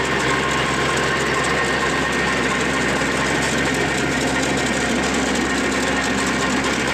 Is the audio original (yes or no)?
yes